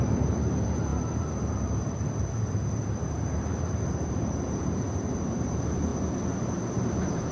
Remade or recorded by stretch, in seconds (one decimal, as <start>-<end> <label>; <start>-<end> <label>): 0.0-5.9 remade; 5.9-6.4 recorded; 6.4-7.3 remade